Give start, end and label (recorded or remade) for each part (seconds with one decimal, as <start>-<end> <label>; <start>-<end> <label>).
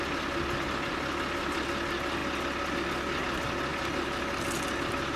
0.0-5.2 recorded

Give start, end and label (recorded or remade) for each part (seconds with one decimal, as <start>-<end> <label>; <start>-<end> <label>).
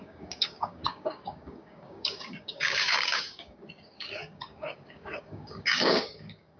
0.0-6.6 remade